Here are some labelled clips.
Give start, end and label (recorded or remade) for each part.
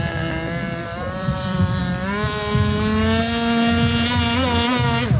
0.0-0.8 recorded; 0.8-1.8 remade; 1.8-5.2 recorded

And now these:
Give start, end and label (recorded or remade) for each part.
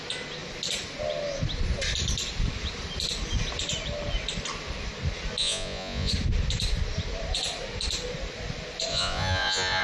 0.0-5.4 recorded; 5.4-6.1 remade; 6.1-8.9 recorded; 8.9-9.8 remade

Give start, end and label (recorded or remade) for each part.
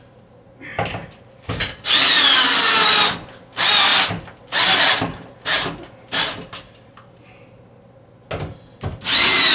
0.0-9.5 recorded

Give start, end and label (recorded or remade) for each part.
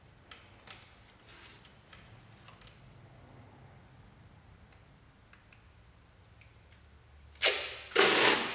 0.0-8.5 recorded